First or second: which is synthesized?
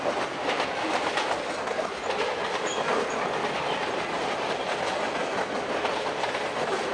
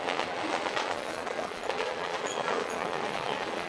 second